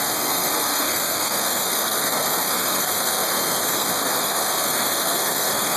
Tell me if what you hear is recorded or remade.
remade